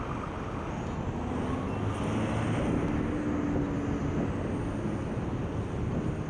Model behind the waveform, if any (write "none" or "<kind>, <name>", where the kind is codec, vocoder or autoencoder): none